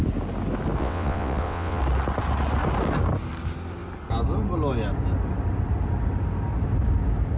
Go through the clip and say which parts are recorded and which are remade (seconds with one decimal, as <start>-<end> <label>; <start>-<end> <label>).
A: 0.0-0.8 recorded; 0.8-1.8 remade; 1.8-7.4 recorded